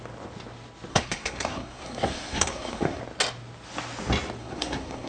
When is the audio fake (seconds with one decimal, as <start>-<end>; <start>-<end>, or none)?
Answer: 0.9-3.0; 4.4-5.1